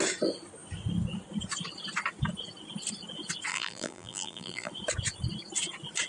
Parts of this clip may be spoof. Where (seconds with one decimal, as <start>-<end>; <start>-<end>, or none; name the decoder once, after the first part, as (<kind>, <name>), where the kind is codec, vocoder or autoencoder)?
3.5-4.7 (vocoder, BigVGAN v2)